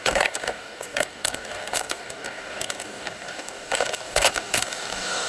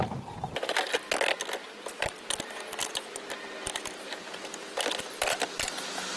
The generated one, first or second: first